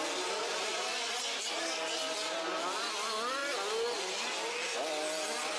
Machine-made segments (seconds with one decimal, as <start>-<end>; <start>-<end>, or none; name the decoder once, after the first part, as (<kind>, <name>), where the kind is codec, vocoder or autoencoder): none